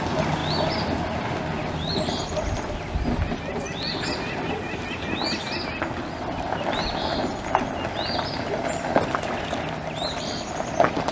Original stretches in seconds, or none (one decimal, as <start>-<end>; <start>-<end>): 0.0-11.1